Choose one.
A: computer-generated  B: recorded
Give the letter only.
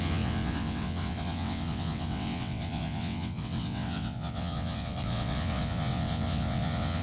A